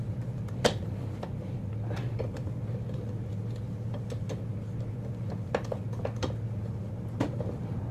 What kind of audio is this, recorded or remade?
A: recorded